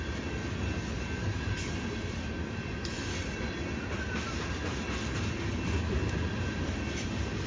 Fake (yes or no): no